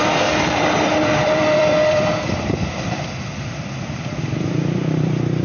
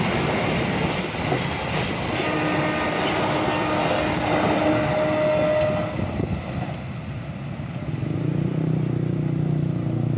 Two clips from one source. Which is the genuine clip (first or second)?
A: second